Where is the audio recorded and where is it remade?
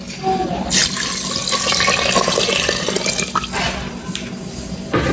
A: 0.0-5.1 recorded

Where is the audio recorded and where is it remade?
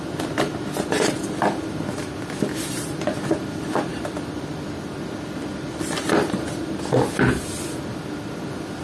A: 0.0-3.9 recorded; 3.9-6.8 remade; 6.8-8.8 recorded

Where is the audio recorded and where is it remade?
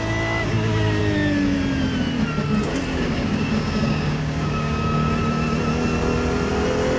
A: 0.0-0.5 recorded; 0.5-1.0 remade; 1.0-2.9 recorded; 2.9-5.1 remade; 5.1-7.0 recorded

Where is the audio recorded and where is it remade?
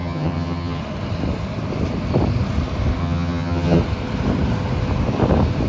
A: 0.0-0.8 remade; 0.8-3.0 recorded; 3.0-3.8 remade; 3.8-5.7 recorded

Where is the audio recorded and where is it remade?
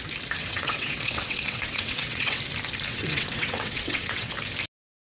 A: 0.0-0.4 recorded; 0.4-2.4 remade; 2.4-2.9 recorded; 2.9-4.3 remade; 4.3-5.2 recorded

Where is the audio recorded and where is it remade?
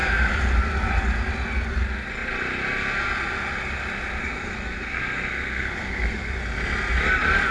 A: 0.0-4.2 recorded; 4.2-6.4 remade; 6.4-7.5 recorded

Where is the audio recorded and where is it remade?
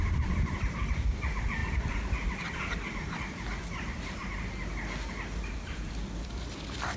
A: 0.0-4.2 remade; 4.2-6.2 recorded; 6.2-7.0 remade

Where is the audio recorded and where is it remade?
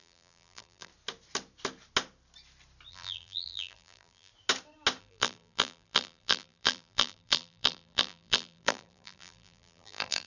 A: 0.0-0.9 remade; 0.9-2.9 recorded; 2.9-4.3 remade; 4.3-5.0 recorded; 5.0-10.3 remade